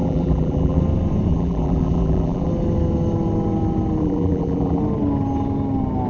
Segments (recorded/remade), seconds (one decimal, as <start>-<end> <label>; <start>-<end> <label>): 0.0-0.8 remade; 0.8-1.3 recorded; 1.3-2.5 remade; 2.5-4.0 recorded; 4.0-4.8 remade; 4.8-6.1 recorded

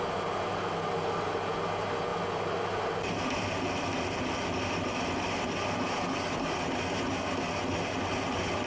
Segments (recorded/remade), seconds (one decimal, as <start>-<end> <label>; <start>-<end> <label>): 0.0-2.1 recorded; 2.1-4.3 remade; 4.3-8.7 recorded

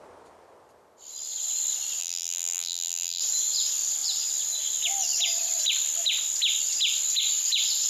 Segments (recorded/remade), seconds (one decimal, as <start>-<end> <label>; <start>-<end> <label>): 0.0-2.0 recorded; 2.0-3.2 remade; 3.2-7.9 recorded

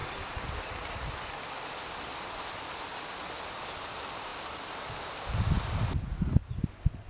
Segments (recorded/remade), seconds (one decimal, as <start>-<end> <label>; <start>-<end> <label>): 0.0-2.6 remade; 2.6-4.3 recorded; 4.3-5.1 remade; 5.1-7.1 recorded